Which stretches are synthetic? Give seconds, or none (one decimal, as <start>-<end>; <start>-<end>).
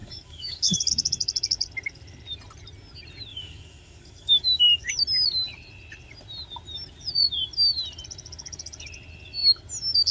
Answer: 0.0-0.9; 3.3-4.9